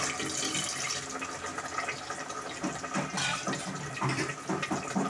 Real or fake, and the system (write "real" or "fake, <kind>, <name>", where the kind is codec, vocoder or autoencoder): real